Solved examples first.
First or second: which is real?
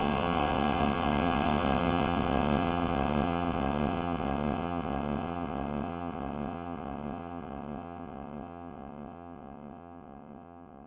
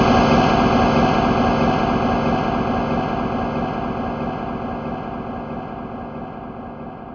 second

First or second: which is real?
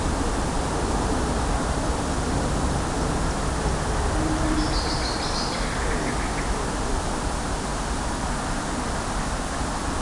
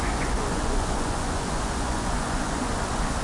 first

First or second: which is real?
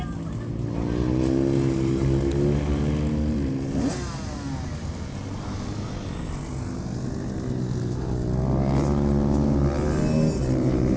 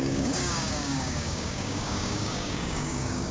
first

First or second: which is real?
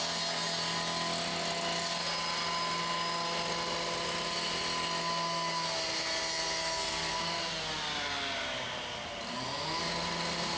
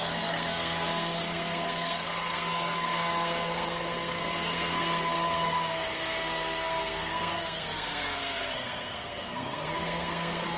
first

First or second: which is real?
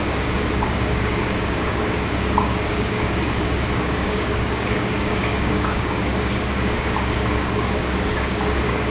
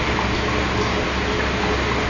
second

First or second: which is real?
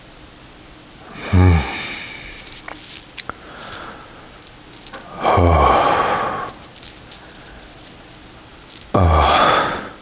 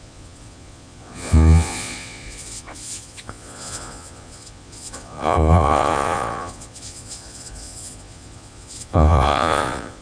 first